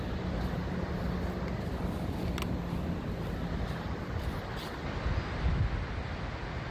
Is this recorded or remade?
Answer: recorded